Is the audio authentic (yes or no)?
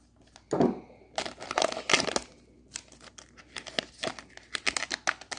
yes